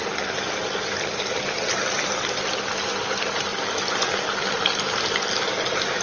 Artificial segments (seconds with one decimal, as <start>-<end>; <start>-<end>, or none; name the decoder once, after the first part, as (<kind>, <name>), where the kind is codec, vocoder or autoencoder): none